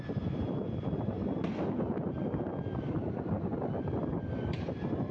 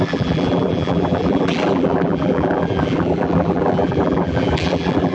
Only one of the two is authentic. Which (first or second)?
first